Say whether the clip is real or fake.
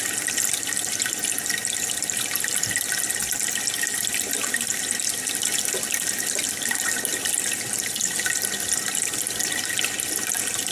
real